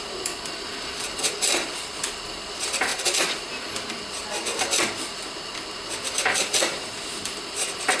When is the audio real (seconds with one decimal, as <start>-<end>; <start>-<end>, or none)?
2.9-4.1; 4.5-5.9